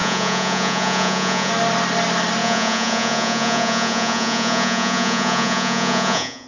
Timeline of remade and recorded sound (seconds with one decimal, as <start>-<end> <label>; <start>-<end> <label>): 0.0-1.5 remade; 1.5-2.4 recorded; 2.4-6.5 remade